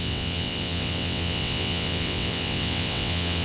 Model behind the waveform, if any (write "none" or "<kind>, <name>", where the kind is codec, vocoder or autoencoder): vocoder, WaveNeXt